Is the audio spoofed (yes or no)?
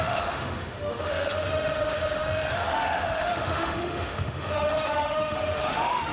yes